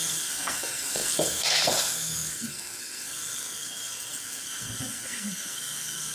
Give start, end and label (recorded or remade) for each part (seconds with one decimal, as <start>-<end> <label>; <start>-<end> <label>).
0.0-6.1 remade